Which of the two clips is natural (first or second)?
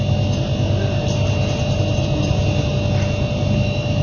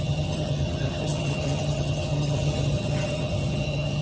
first